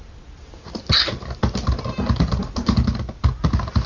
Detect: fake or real real